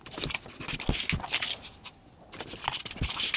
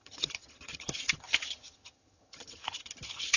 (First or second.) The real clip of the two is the first